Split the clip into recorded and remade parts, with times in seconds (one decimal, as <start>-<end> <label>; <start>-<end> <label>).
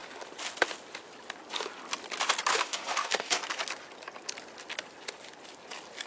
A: 0.0-2.5 recorded; 2.5-3.4 remade; 3.4-6.1 recorded